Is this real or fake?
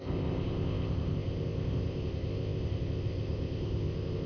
fake